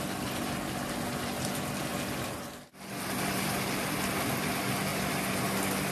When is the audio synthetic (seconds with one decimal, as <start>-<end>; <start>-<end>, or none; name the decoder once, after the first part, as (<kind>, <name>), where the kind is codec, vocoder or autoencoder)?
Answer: none